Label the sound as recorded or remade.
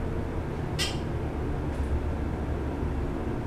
recorded